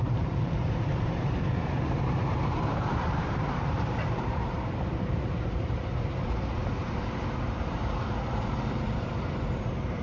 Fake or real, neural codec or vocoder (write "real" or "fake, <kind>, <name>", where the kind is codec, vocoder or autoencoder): fake, vocoder, BigVGAN v2